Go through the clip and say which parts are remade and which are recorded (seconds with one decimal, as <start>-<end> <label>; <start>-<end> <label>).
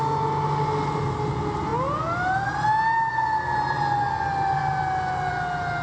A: 0.0-5.8 recorded